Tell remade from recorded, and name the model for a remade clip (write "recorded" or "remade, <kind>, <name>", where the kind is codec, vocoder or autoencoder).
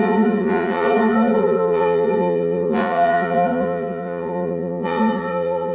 remade, vocoder, Vocos